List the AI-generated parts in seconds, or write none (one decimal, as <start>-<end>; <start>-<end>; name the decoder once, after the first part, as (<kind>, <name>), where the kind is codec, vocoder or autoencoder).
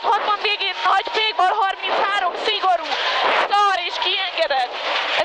0.8-1.4 (vocoder, BigVGAN v2); 1.8-5.2